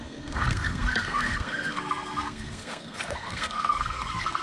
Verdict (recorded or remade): remade